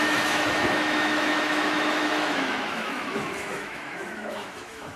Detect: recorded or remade remade